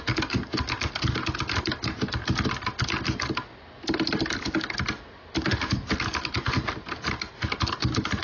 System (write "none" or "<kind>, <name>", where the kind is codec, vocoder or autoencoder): none